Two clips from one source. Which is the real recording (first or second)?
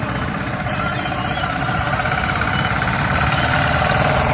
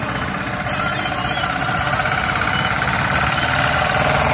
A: second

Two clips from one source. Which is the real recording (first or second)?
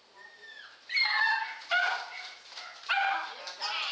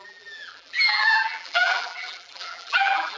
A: first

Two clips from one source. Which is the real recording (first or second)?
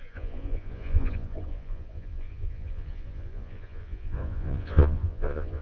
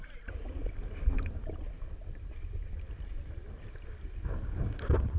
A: second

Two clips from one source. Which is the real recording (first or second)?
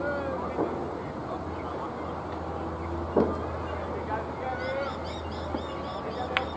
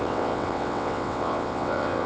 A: first